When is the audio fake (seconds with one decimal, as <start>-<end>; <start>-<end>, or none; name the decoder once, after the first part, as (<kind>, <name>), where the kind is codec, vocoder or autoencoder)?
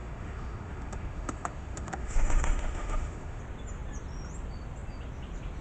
0.0-3.4 (autoencoder, DAC-VAE)